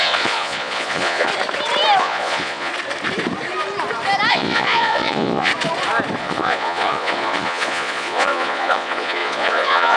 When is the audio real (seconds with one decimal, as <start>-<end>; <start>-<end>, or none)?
1.3-2.0; 2.7-4.3; 5.5-6.2